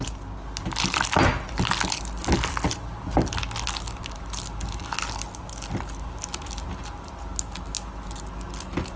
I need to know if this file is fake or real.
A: real